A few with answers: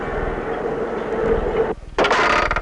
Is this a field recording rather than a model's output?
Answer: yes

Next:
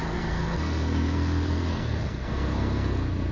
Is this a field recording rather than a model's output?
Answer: no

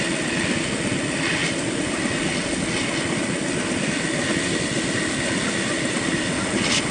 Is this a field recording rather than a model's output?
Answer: yes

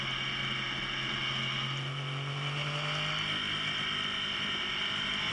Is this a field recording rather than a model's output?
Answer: yes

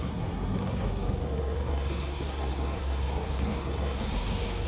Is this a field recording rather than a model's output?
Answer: no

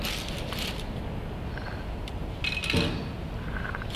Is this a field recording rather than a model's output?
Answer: yes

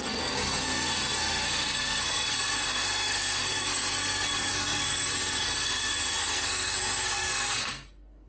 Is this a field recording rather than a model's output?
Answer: no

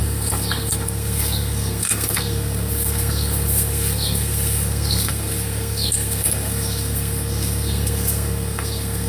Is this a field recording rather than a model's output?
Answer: no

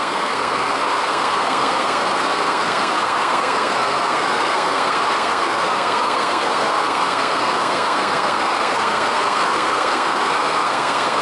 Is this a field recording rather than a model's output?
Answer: no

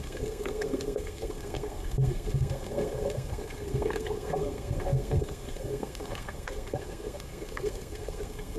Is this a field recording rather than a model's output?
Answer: no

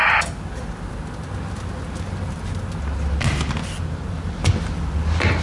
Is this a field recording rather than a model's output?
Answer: yes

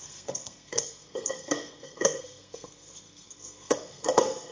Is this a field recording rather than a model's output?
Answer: no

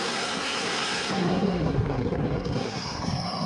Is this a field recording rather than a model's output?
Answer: no